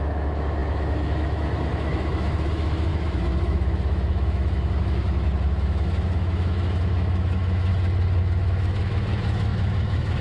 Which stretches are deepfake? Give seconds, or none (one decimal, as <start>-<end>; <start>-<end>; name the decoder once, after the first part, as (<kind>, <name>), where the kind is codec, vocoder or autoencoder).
0.0-7.7 (autoencoder, DAC-VAE); 8.2-10.2